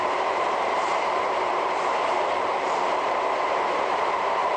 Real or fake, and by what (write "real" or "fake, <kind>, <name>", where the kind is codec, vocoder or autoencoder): fake, vocoder, BigVGAN v2